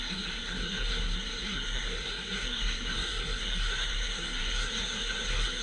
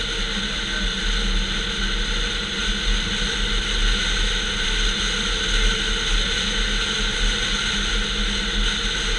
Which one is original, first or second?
second